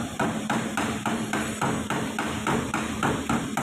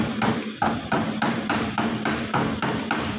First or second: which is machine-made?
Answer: second